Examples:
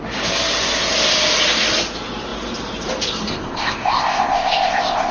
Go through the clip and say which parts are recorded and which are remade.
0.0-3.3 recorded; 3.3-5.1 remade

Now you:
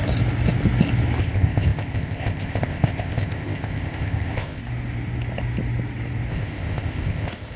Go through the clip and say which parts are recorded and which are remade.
0.0-1.2 recorded; 1.2-4.6 remade; 4.6-6.3 recorded; 6.3-7.6 remade

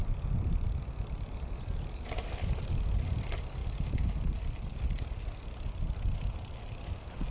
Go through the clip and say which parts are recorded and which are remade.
0.0-7.3 recorded

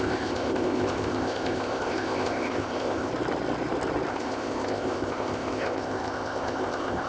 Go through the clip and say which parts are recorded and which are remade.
0.0-3.1 remade; 3.1-4.1 recorded; 4.1-7.1 remade